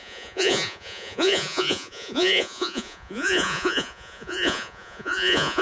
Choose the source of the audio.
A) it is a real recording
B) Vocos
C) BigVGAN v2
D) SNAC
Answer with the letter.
B